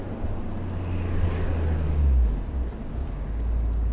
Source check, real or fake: real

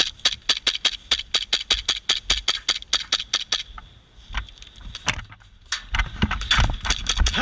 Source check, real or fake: real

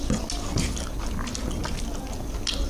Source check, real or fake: real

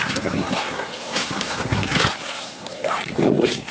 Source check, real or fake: fake